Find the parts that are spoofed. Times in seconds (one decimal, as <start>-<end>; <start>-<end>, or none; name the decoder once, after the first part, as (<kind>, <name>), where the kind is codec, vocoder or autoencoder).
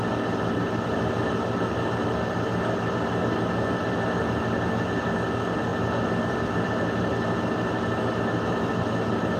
5.7-6.7 (vocoder, BigVGAN v2)